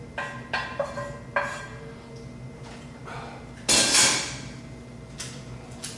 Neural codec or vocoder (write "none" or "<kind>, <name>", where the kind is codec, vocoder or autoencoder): none